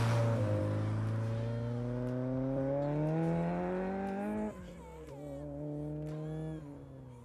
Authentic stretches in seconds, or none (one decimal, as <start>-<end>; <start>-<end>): 0.0-7.2